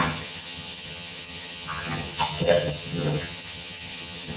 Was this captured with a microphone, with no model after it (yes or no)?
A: no